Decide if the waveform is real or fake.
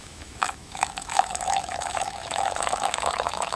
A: fake